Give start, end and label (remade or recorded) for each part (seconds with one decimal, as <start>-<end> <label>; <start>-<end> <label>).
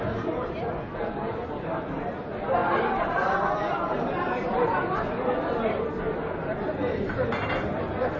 0.0-8.2 recorded